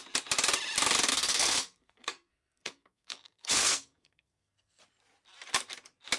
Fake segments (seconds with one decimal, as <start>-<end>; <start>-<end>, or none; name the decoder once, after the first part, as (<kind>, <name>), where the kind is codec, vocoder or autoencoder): 1.1-4.8 (codec, SNAC)